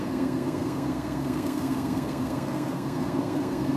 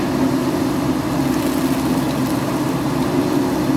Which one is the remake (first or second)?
first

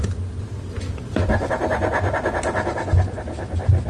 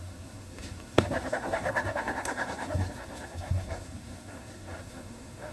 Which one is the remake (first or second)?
second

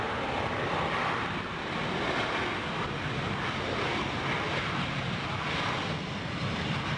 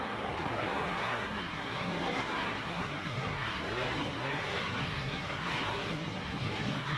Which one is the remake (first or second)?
second